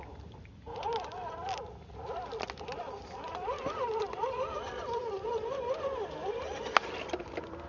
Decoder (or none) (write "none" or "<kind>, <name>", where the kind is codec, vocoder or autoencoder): none